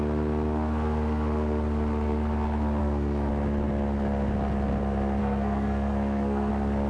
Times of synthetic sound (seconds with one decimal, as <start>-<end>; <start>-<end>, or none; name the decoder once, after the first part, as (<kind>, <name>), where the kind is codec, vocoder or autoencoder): 2.8-3.3 (codec, SNAC); 5.2-6.5